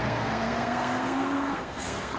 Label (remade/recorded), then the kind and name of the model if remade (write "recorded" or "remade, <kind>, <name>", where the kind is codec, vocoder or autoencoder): remade, codec, SNAC